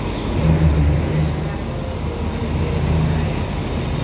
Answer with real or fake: real